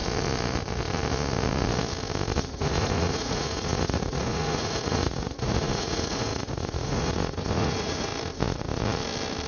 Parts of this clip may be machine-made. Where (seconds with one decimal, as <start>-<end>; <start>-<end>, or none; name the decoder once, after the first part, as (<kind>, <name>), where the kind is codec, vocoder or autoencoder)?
2.5-8.1 (vocoder, Vocos)